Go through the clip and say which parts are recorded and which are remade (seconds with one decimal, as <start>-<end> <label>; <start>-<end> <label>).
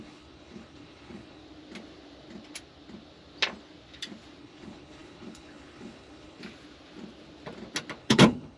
0.0-1.4 remade; 1.4-4.4 recorded; 4.4-6.4 remade; 6.4-8.0 recorded; 8.0-8.6 remade